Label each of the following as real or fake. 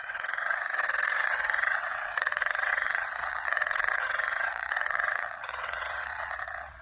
fake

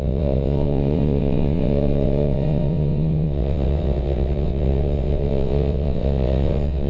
fake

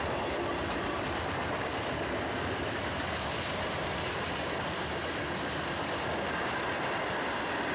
real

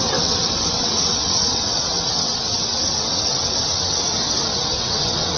fake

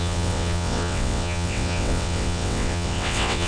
fake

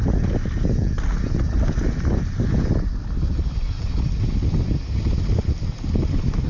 real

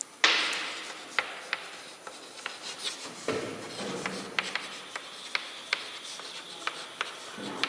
real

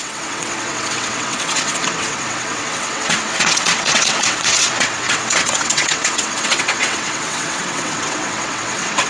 fake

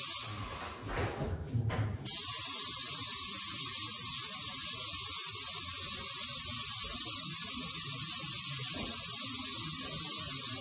real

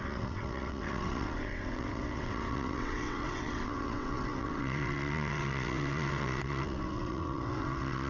fake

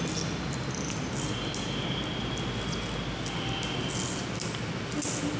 real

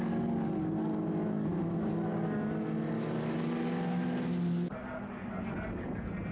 real